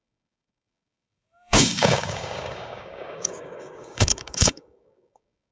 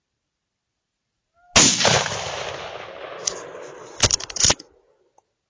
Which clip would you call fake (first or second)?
first